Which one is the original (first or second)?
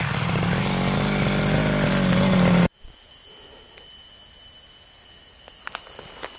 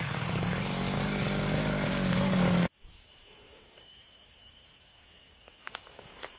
first